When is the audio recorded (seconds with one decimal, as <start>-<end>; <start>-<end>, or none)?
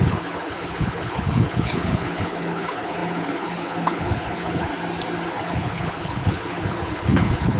4.7-5.3